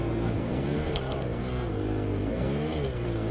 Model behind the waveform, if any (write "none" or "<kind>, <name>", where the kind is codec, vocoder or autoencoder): codec, SNAC